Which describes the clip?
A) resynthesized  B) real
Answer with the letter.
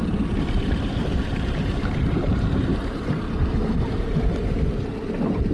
A